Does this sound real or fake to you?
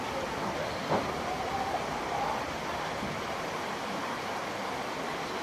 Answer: fake